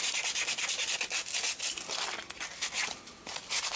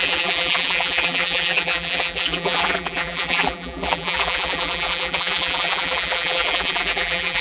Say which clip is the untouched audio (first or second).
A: first